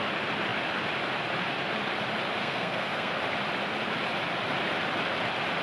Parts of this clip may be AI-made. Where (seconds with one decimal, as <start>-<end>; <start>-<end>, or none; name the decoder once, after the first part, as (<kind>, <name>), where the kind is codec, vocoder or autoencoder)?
2.4-3.1 (codec, SNAC)